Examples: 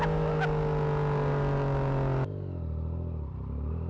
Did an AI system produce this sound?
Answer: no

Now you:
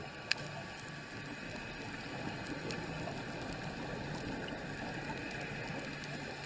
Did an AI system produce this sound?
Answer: no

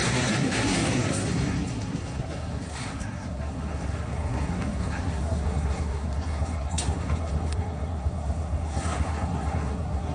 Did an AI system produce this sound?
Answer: yes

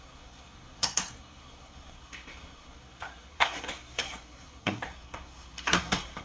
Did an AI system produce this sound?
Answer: yes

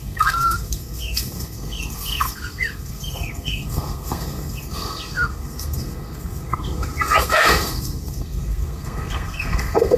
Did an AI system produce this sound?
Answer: yes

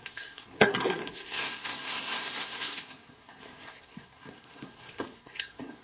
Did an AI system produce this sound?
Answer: yes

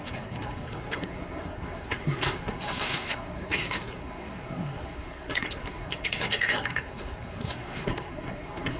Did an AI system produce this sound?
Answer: yes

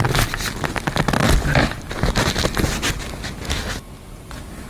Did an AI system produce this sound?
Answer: no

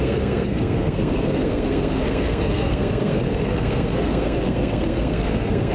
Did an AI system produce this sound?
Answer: yes